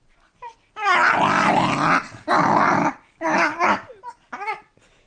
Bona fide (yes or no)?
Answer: yes